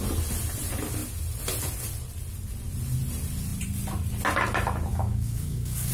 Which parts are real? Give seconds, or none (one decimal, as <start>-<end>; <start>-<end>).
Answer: 0.0-4.9